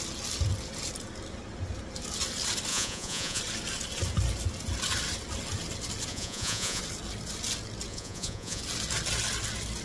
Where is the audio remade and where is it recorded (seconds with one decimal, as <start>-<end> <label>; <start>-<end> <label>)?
0.0-2.7 recorded; 2.7-3.4 remade; 3.4-6.1 recorded; 6.1-6.8 remade; 6.8-7.9 recorded; 7.9-8.6 remade; 8.6-9.8 recorded